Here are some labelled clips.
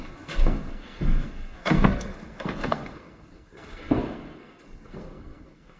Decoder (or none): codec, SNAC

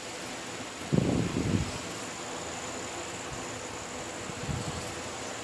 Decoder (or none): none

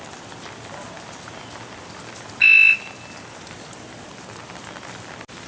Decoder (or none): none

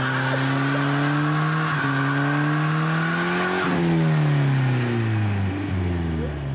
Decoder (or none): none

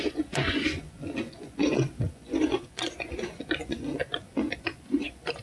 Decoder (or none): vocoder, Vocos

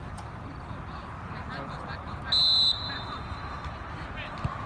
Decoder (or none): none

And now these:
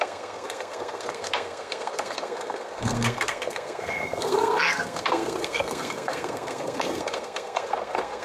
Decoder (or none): codec, SNAC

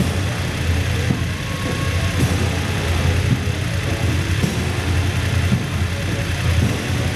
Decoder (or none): none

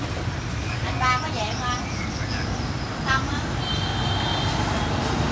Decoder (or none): none